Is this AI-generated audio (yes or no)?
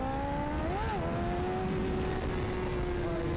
no